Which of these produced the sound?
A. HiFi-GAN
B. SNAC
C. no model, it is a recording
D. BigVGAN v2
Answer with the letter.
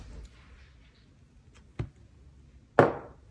C